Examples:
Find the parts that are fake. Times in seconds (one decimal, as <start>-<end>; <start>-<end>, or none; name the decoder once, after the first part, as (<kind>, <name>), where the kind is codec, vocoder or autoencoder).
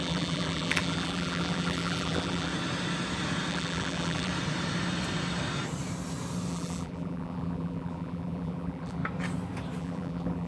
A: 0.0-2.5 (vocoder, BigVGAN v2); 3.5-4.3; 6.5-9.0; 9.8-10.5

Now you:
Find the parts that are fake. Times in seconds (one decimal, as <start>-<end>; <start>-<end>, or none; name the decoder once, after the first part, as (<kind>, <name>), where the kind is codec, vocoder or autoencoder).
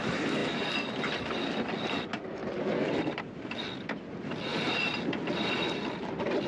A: none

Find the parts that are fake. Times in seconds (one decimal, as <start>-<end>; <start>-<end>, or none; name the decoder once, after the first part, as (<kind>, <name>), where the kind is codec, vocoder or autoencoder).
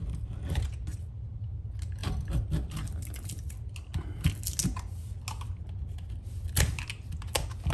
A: none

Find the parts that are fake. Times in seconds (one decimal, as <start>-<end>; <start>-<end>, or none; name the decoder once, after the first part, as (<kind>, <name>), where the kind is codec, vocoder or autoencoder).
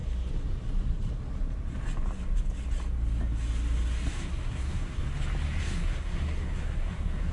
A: 4.1-5.0 (codec, SNAC); 5.6-7.3